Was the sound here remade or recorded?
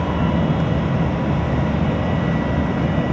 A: recorded